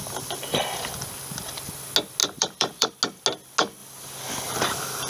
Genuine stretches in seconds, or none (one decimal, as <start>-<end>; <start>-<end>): 0.0-2.2; 2.9-3.8